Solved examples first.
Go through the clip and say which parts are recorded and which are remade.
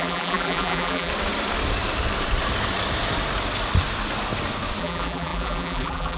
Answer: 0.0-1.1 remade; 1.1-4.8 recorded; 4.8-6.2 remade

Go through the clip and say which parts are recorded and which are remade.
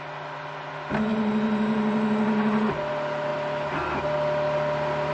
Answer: 0.0-1.1 recorded; 1.1-2.9 remade; 2.9-3.3 recorded; 3.3-5.1 remade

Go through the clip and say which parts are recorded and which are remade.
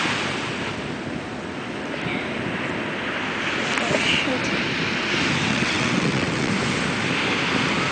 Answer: 0.0-5.5 recorded; 5.5-6.5 remade; 6.5-7.9 recorded